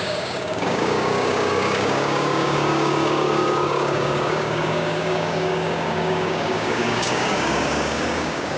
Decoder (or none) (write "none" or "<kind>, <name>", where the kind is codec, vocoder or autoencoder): codec, DAC